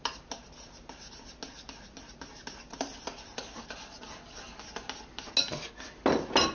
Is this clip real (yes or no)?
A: yes